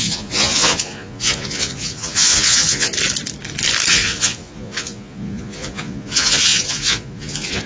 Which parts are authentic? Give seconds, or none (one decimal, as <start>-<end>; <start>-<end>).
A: 2.9-3.9